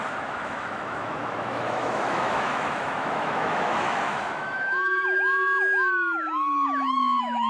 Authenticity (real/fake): fake